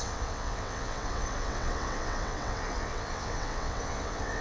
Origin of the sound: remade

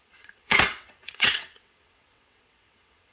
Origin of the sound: remade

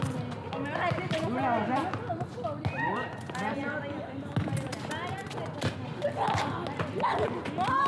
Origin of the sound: recorded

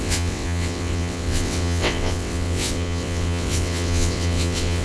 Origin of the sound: remade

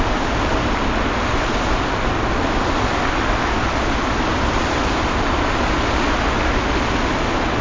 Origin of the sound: recorded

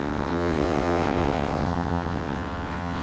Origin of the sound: remade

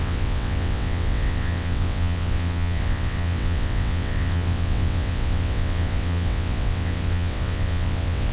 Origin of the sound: remade